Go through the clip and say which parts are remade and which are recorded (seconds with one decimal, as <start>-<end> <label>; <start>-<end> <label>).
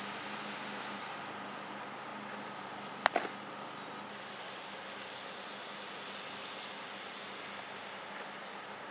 0.0-8.9 recorded